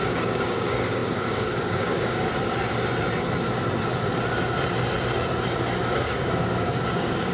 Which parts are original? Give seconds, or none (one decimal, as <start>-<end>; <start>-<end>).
2.3-5.8